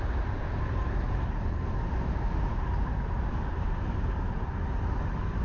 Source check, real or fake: real